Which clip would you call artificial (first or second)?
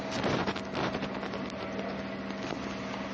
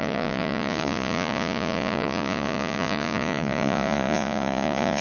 second